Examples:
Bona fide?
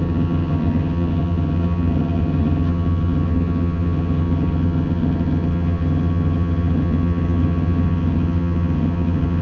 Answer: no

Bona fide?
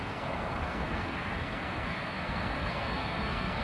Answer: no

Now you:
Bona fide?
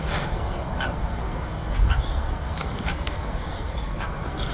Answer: no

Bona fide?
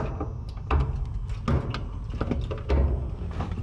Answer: yes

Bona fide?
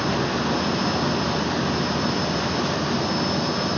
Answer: yes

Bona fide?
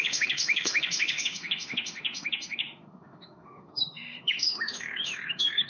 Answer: no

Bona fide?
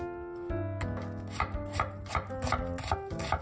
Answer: yes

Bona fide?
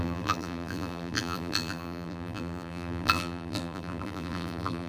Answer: no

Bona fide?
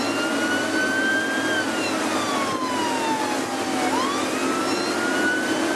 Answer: yes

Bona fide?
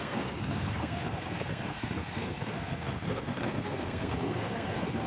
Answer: no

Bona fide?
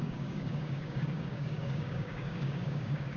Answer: no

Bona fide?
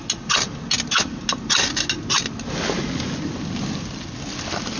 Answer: yes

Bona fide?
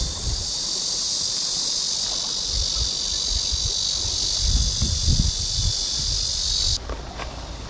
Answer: yes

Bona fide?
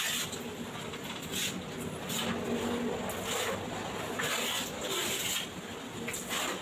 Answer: yes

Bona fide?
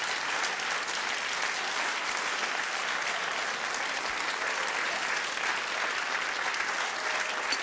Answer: yes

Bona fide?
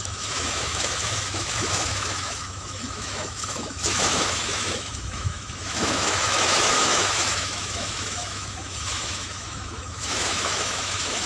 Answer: no